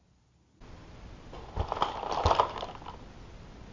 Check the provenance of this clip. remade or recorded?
recorded